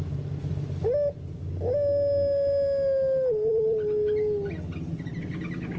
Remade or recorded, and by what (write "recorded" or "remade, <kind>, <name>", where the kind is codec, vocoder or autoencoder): recorded